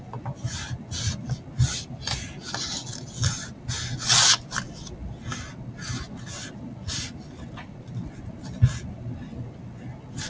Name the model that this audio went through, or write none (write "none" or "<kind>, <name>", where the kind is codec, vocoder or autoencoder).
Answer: none